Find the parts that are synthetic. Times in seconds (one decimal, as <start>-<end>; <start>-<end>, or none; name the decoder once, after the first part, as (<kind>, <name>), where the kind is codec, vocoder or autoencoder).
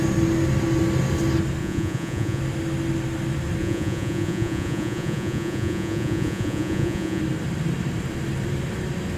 1.6-2.4 (vocoder, Vocos); 3.6-7.2